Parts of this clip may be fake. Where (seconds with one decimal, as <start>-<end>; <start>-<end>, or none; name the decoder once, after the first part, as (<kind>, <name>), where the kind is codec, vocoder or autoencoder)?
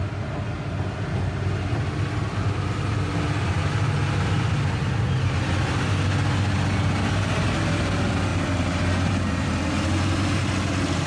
none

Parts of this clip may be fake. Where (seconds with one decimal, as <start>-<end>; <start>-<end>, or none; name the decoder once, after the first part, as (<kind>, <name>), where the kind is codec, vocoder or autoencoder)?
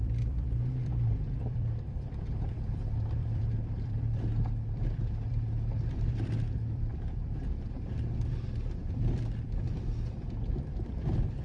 0.0-6.9 (vocoder, BigVGAN v2); 8.8-11.4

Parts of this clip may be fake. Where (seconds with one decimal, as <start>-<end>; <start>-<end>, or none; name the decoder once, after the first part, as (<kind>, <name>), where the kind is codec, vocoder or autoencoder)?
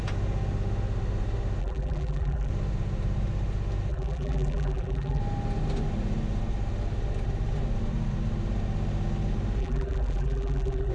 1.6-2.5 (vocoder, BigVGAN v2); 3.9-5.2; 9.6-10.9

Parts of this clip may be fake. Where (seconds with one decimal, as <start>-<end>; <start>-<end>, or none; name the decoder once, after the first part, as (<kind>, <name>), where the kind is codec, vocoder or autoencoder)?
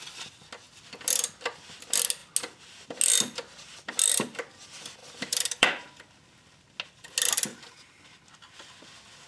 5.0-6.1 (vocoder, BigVGAN v2); 7.5-8.0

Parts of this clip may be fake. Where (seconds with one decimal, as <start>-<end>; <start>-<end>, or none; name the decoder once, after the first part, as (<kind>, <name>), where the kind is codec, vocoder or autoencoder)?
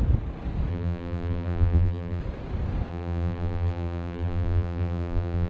0.7-2.2 (vocoder, BigVGAN v2); 2.9-5.5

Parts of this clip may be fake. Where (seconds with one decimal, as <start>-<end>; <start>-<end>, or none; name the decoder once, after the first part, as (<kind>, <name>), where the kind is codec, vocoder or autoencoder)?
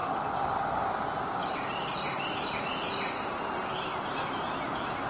none